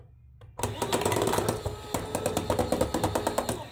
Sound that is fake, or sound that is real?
real